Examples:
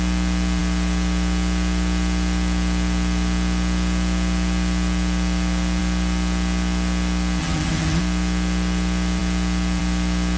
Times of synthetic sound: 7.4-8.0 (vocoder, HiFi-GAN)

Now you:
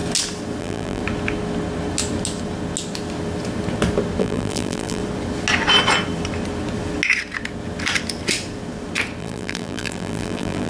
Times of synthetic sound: 0.6-1.0 (vocoder, BigVGAN v2); 4.2-5.0; 9.2-10.7

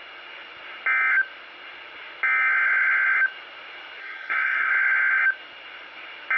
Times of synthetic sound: 4.0-4.7 (codec, SNAC)

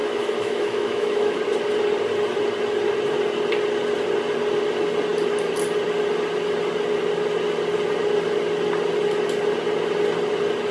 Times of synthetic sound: 0.0-1.4 (autoencoder, DAC-VAE)

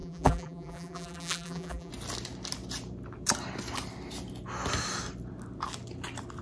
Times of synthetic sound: 0.0-1.9 (vocoder, BigVGAN v2)

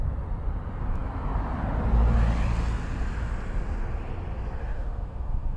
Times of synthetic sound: 4.6-5.6 (autoencoder, DAC-VAE)

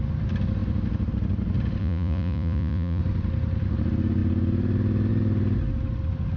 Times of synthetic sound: 1.8-3.0 (vocoder, Vocos)

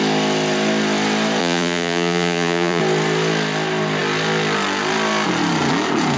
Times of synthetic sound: 1.4-2.8 (vocoder, Vocos)